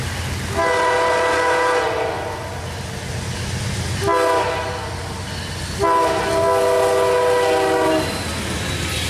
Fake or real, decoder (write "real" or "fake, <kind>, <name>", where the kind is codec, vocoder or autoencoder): real